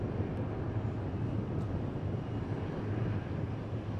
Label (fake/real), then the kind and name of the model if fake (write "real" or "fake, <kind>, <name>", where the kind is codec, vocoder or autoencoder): real